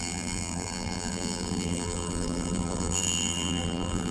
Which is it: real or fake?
fake